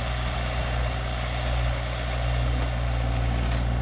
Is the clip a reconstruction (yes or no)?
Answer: no